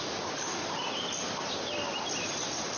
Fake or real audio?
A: real